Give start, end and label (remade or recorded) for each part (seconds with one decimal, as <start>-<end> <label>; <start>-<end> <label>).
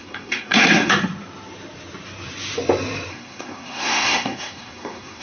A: 0.0-0.9 remade; 0.9-3.1 recorded; 3.1-5.2 remade